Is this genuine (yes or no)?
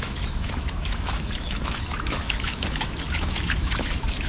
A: no